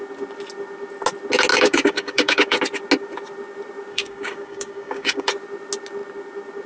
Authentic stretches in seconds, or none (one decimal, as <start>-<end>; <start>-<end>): 0.0-1.5; 2.6-3.9; 5.3-6.7